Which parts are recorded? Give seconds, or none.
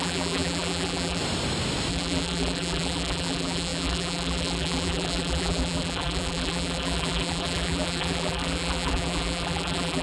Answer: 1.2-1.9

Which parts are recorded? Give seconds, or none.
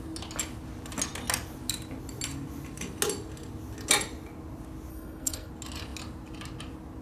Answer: 0.0-4.9; 5.5-7.0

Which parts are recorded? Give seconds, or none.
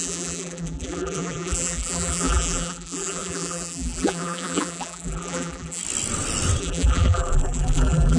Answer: 5.8-6.6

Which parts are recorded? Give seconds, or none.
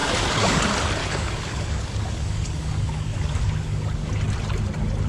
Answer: 0.6-1.0; 4.1-5.1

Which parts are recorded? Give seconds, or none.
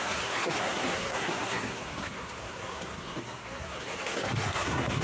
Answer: none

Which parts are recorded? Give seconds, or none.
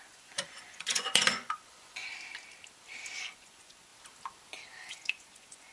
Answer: 2.0-3.2; 3.9-4.9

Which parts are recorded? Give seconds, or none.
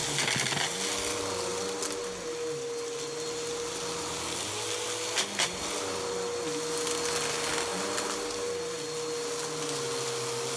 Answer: 0.0-10.6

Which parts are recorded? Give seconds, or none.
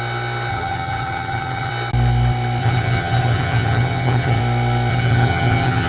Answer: 0.0-0.5; 1.7-2.6; 4.4-4.9